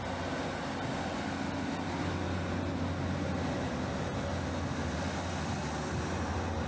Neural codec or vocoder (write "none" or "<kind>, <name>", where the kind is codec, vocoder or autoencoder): none